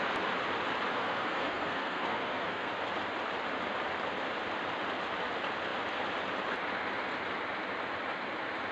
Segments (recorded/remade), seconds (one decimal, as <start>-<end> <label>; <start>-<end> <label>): 0.0-0.9 recorded; 0.9-2.7 remade; 2.7-8.7 recorded